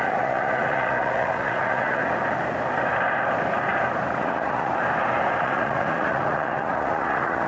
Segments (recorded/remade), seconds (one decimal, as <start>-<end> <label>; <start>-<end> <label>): 0.0-2.0 remade; 2.0-4.2 recorded; 4.2-4.7 remade; 4.7-5.4 recorded; 5.4-7.5 remade